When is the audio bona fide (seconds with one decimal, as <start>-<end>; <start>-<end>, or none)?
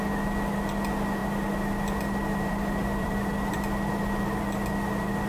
0.0-1.2; 4.4-5.3